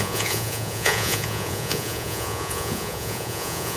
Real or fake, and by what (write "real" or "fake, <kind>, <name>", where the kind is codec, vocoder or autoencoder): fake, vocoder, Vocos